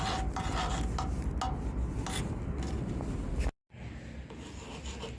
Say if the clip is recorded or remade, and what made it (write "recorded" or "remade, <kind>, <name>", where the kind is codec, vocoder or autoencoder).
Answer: recorded